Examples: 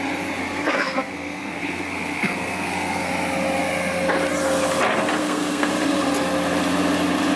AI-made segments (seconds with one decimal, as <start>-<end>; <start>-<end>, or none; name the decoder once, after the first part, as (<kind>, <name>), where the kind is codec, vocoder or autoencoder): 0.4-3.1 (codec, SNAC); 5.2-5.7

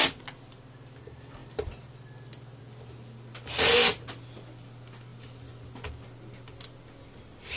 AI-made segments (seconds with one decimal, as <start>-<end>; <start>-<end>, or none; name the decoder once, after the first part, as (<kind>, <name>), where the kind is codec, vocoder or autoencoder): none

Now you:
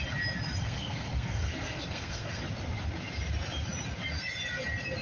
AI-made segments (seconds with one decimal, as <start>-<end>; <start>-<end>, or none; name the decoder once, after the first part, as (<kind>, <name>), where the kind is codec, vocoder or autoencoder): 0.6-2.4 (codec, SNAC)

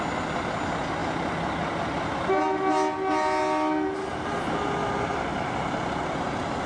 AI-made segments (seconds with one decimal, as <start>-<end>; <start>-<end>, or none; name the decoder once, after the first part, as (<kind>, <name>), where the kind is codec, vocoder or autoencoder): none